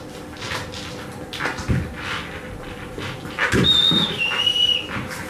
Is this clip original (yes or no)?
yes